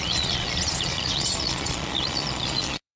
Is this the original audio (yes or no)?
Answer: no